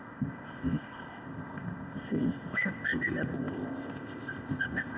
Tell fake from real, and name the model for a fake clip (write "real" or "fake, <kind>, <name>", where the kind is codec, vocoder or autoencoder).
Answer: fake, codec, ZipCodec